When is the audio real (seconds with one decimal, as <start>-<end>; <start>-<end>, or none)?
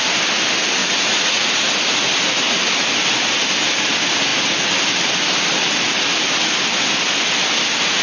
0.0-0.8; 1.7-8.0